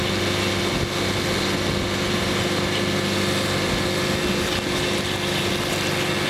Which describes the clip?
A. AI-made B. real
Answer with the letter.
B